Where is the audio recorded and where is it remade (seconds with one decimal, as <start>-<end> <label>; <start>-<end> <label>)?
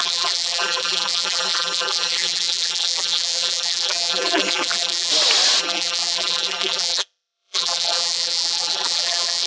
0.0-5.1 remade; 5.1-5.6 recorded; 5.6-9.5 remade